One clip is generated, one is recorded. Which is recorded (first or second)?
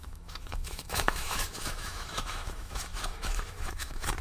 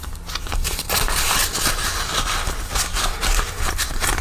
second